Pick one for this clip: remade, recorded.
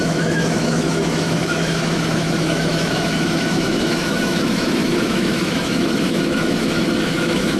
remade